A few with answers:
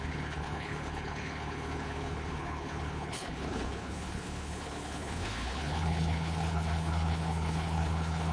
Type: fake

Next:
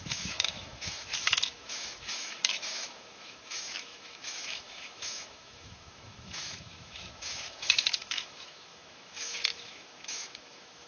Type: fake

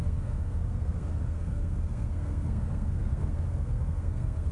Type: fake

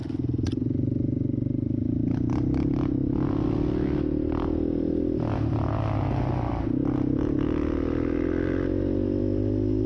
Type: real